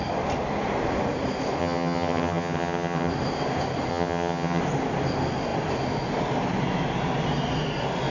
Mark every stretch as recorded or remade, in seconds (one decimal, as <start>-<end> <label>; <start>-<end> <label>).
0.0-1.6 recorded; 1.6-3.1 remade; 3.1-3.9 recorded; 3.9-4.6 remade; 4.6-8.1 recorded